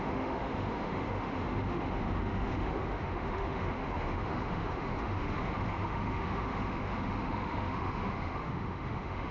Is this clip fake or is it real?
fake